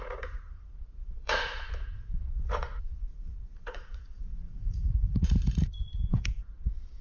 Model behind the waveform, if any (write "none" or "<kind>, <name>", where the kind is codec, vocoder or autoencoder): vocoder, Vocos